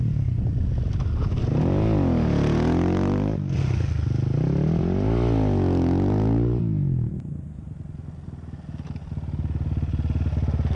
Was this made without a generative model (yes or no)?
yes